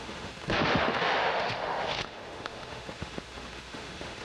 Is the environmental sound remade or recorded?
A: remade